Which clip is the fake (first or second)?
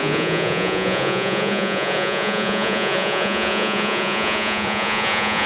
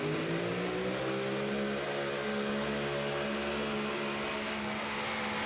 first